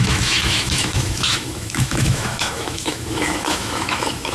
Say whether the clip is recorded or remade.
remade